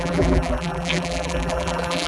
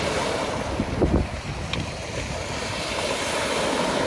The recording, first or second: second